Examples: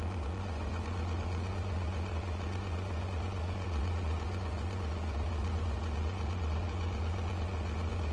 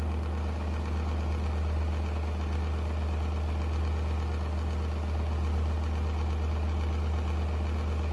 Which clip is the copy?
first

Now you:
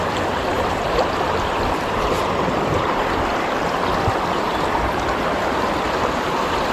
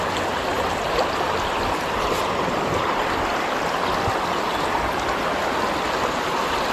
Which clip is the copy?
first